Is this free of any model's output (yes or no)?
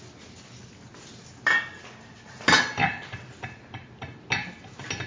yes